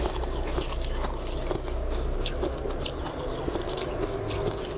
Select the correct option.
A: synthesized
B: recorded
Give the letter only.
B